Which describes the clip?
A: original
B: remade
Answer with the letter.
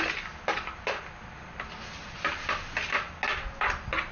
A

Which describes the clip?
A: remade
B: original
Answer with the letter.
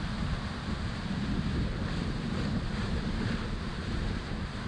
A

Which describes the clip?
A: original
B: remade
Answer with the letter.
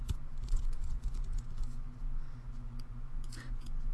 B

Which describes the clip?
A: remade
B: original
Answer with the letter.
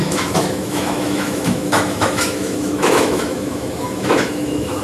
A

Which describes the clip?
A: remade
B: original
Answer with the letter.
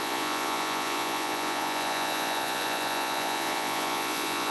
A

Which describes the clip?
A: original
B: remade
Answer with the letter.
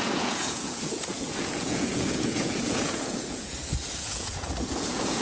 B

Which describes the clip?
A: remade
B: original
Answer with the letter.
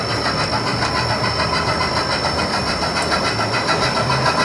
B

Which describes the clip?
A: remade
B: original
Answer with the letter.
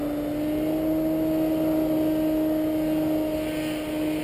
B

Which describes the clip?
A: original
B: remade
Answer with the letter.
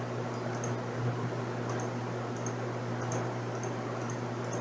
A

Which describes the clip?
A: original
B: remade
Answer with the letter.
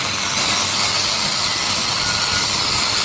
A